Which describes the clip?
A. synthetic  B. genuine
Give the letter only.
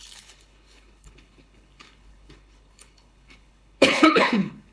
A